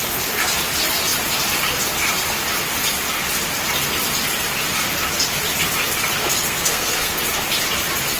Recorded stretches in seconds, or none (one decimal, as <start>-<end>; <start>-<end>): 0.0-6.2; 7.2-8.2